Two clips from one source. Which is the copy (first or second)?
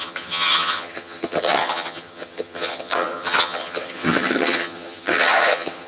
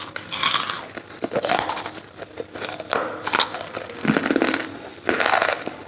first